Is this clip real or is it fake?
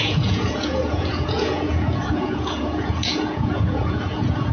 fake